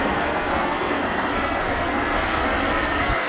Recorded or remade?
remade